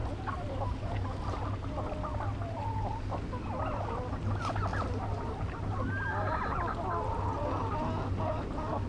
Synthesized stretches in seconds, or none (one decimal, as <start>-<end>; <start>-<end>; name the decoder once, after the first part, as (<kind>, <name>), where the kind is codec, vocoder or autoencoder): none